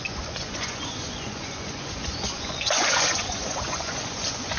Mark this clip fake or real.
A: fake